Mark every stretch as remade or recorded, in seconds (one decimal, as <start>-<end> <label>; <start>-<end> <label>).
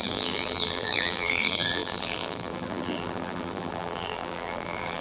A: 0.0-5.0 remade